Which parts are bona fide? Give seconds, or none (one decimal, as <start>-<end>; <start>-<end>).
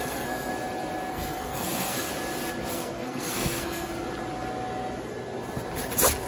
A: 0.5-1.1; 2.1-2.7; 3.9-6.3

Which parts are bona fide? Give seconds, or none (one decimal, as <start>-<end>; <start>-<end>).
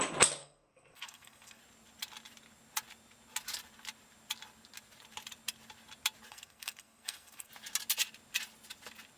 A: 0.0-0.4; 1.6-6.3; 7.5-9.2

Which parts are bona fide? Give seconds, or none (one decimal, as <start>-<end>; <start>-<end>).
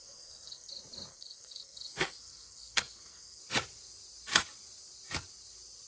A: 0.7-1.1; 3.4-5.9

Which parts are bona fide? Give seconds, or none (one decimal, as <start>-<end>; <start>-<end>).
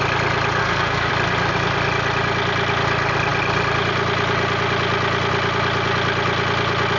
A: 0.0-0.6; 1.1-7.0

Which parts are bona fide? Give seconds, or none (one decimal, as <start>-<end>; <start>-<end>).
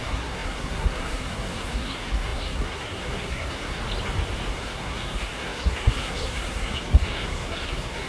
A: 3.8-4.5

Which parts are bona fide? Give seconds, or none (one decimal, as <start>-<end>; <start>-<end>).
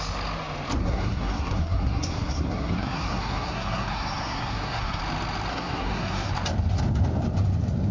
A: 0.0-0.8; 5.0-5.5; 6.3-7.9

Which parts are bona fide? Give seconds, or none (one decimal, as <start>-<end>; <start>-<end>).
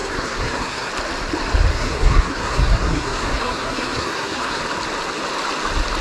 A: 0.9-1.7; 4.6-6.0